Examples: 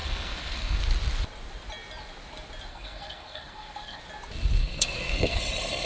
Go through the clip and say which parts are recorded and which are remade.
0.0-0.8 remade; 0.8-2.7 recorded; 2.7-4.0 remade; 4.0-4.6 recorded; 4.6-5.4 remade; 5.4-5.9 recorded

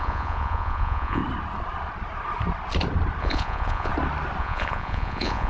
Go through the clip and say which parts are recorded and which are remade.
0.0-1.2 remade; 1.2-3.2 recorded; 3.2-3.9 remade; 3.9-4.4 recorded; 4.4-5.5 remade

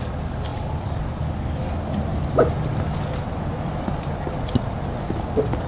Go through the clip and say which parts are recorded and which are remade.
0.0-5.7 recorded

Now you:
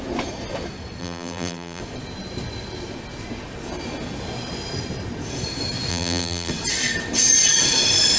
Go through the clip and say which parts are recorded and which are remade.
0.0-1.0 recorded; 1.0-1.8 remade; 1.8-5.9 recorded; 5.9-6.5 remade; 6.5-8.2 recorded

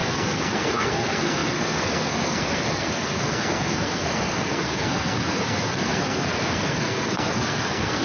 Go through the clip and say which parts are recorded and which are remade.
0.0-8.0 remade

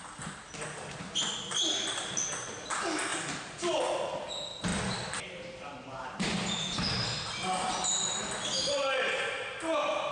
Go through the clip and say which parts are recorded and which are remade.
0.0-10.1 recorded

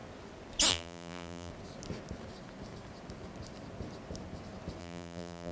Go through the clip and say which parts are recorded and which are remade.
0.0-0.7 recorded; 0.7-1.5 remade; 1.5-4.8 recorded; 4.8-5.5 remade